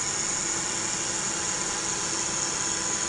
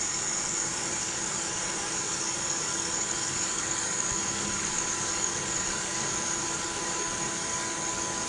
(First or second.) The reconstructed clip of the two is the second